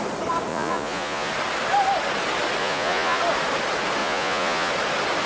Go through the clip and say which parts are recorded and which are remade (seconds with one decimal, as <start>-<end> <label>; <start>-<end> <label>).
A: 0.0-0.5 recorded; 0.5-1.3 remade; 1.3-2.6 recorded; 2.6-3.2 remade; 3.2-4.0 recorded; 4.0-4.7 remade; 4.7-5.3 recorded